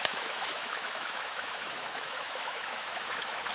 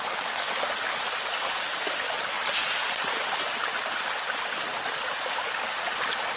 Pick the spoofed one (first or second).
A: first